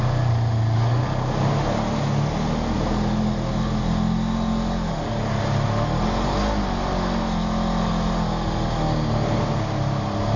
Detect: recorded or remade recorded